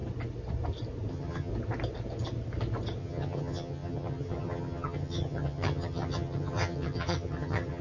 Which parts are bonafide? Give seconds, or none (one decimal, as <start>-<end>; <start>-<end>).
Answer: 0.0-1.1; 1.5-3.0